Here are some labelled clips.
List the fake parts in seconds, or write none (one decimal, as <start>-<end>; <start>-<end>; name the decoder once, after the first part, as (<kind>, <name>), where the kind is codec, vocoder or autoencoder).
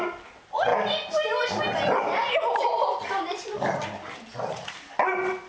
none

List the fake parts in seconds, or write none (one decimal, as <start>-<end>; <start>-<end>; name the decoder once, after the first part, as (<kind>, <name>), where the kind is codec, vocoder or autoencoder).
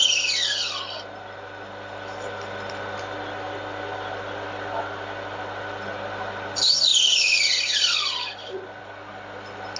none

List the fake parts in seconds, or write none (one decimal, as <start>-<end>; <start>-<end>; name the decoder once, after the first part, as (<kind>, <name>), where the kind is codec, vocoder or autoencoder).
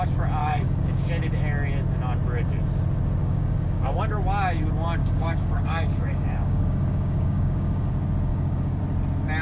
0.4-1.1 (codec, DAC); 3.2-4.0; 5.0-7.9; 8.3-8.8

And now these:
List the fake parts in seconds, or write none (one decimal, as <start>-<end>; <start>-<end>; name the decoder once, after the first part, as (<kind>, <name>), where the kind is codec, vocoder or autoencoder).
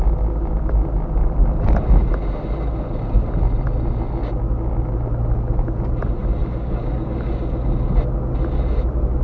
6.4-7.3 (codec, DAC)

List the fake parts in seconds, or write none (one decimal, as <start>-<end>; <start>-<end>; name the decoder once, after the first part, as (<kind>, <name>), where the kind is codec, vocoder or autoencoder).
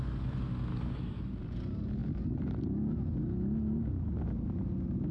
0.7-1.3 (codec, DAC)